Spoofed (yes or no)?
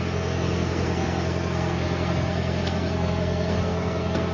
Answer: yes